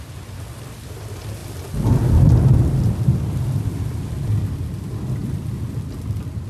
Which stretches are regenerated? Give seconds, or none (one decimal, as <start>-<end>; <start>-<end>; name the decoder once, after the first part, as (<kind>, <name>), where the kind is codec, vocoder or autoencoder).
none